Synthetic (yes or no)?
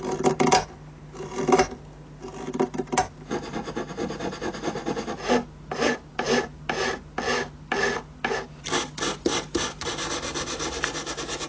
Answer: no